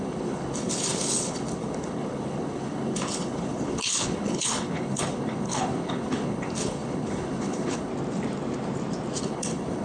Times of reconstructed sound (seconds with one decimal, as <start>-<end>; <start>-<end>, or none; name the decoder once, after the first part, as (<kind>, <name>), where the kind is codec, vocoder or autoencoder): 0.0-7.9 (codec, HILCodec); 9.2-9.8